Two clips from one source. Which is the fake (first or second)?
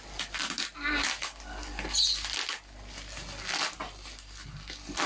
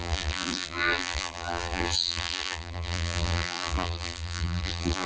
second